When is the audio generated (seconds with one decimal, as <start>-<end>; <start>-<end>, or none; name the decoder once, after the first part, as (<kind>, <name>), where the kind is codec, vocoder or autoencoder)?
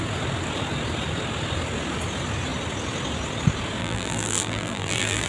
3.8-5.3 (vocoder, BigVGAN v2)